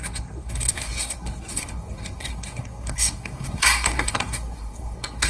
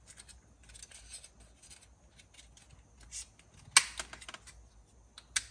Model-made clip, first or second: first